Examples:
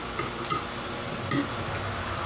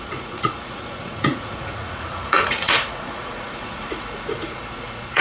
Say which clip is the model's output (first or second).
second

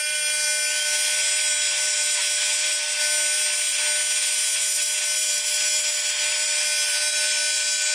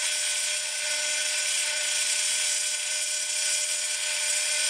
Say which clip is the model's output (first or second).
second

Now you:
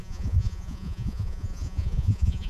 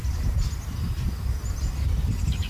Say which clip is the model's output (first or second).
first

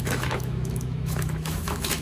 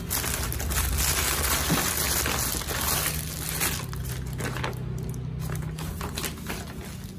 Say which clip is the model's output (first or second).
first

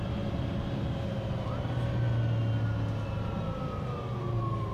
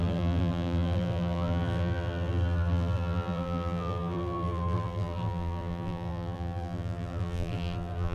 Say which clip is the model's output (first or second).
second